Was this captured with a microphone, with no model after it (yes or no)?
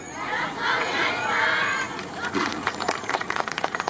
no